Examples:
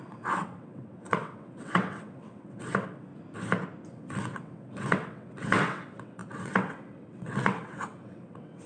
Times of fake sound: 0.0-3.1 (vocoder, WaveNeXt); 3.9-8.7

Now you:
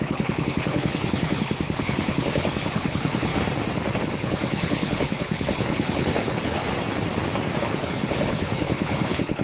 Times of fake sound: 0.0-3.3 (codec, HILCodec); 4.0-6.6; 7.6-9.4